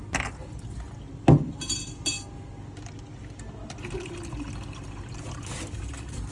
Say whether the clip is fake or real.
real